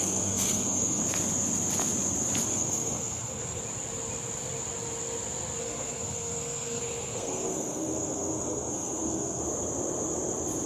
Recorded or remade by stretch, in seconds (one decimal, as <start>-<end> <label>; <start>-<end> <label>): 0.0-1.0 remade; 1.0-2.5 recorded; 2.5-3.6 remade; 3.6-5.6 recorded; 5.6-9.4 remade; 9.4-10.7 recorded